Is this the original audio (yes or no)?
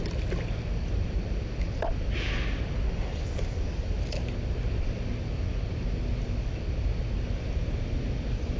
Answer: yes